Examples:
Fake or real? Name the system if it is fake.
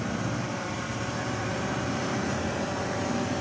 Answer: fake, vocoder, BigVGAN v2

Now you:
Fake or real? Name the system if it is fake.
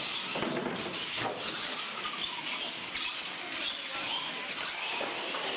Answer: real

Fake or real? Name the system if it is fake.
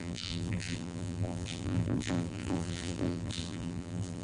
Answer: fake, vocoder, BigVGAN v2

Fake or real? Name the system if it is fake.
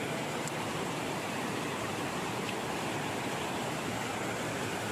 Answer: real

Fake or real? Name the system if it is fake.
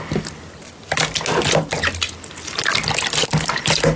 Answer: real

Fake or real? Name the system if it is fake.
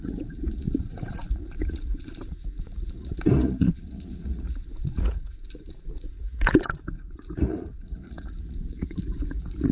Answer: fake, vocoder, Vocos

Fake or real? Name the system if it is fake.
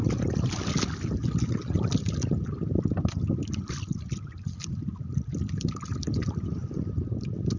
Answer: real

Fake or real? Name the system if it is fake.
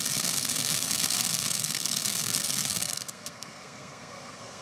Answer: fake, codec, SNAC